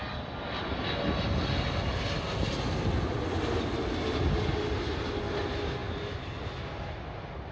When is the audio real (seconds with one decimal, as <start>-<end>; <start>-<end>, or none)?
0.0-7.5